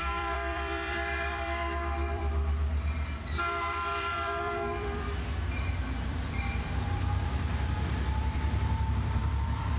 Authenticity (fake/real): fake